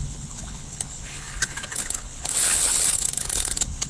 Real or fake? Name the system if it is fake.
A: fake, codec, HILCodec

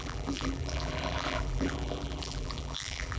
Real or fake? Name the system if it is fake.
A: fake, vocoder, BigVGAN v2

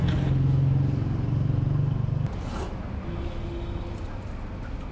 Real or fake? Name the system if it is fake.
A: real